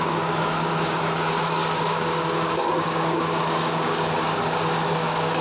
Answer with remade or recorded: remade